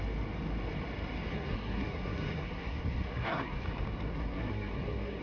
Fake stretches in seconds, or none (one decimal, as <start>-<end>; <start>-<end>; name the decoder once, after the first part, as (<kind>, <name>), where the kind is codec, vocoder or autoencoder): 1.3-3.6 (codec, SNAC); 4.1-5.2